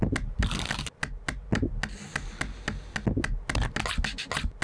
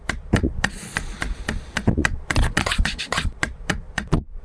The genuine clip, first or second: first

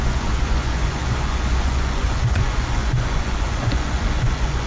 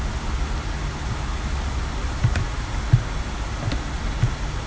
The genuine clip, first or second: second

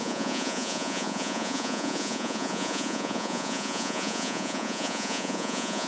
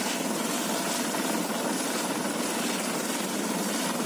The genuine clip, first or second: second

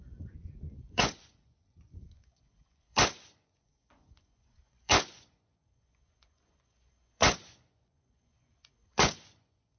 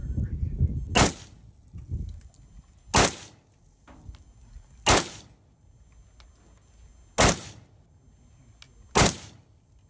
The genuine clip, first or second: second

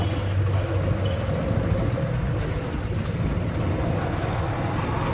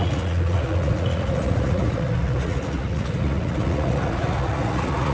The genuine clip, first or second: first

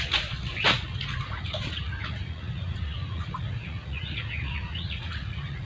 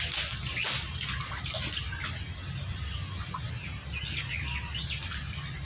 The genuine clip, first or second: second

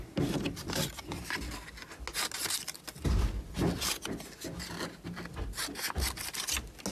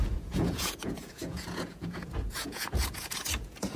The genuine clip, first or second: first